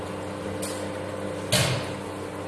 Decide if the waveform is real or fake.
real